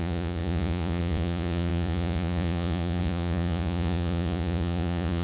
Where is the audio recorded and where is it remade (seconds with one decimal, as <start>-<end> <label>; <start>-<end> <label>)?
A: 0.0-5.2 remade